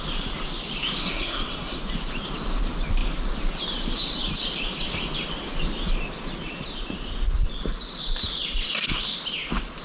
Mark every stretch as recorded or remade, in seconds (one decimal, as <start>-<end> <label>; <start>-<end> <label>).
0.0-1.0 recorded; 1.0-1.8 remade; 1.8-9.8 recorded